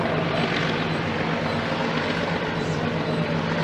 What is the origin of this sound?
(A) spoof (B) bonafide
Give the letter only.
B